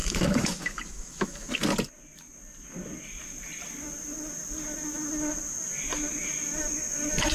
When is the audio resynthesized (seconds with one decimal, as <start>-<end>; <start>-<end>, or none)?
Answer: 0.0-1.5